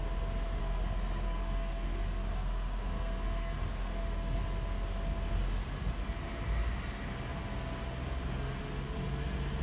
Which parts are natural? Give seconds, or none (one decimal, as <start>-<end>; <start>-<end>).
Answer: 0.0-0.6; 4.4-9.6